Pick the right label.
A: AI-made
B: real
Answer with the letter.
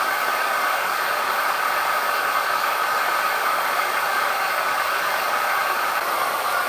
A